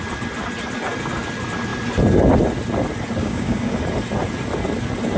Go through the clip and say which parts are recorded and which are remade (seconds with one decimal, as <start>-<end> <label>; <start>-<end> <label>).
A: 0.0-3.2 recorded; 3.2-3.8 remade; 3.8-5.2 recorded